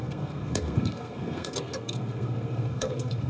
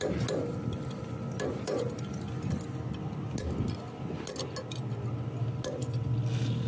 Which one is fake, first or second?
first